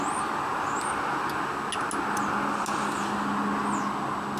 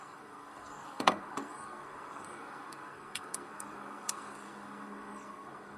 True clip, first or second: first